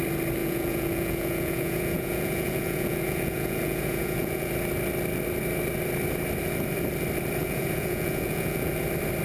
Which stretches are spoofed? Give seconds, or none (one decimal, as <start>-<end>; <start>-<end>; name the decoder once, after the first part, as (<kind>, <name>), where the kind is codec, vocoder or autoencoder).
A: 0.4-4.5 (vocoder, Vocos); 7.4-8.7